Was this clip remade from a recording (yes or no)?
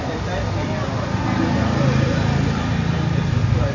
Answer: no